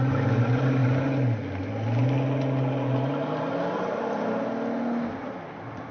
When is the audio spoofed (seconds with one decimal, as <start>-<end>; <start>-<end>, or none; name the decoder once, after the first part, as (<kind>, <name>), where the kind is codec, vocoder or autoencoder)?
none